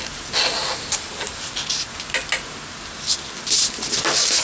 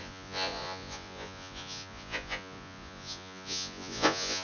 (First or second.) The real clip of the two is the first